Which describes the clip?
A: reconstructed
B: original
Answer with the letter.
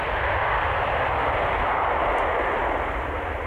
B